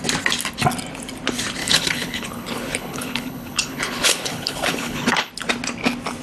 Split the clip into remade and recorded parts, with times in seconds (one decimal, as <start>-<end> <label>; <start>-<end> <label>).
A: 0.0-1.6 recorded; 1.6-5.3 remade; 5.3-6.2 recorded